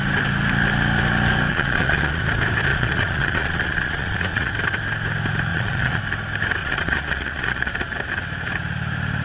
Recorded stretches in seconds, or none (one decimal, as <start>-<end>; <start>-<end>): 0.0-1.5; 2.2-2.7; 4.5-5.5; 6.0-6.6; 7.7-9.2